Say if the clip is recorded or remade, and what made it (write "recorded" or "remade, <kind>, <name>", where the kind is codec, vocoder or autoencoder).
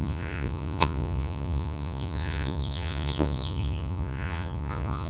remade, vocoder, Vocos